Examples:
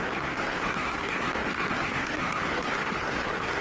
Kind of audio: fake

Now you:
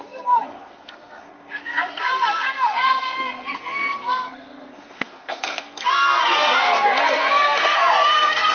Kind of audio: fake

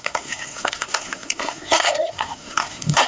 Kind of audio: fake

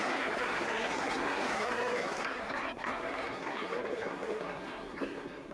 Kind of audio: fake